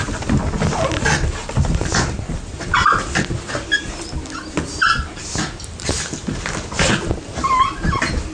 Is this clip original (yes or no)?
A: yes